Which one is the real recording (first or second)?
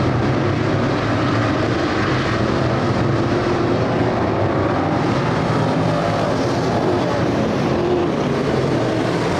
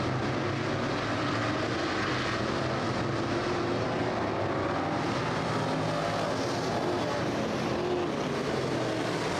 second